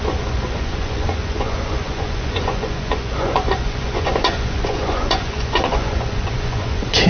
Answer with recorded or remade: remade